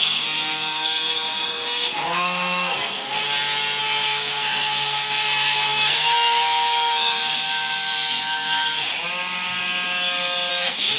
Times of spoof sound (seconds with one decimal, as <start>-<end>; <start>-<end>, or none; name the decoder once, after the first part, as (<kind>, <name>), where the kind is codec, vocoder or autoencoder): 0.0-3.2 (codec, SNAC); 3.8-8.9; 10.5-11.0